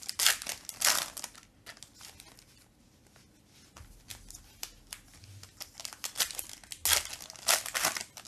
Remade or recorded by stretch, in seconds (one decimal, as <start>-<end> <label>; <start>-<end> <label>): 0.0-8.3 recorded